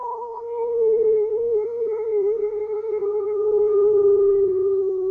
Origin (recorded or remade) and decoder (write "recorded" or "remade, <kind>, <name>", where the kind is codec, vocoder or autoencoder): remade, codec, SNAC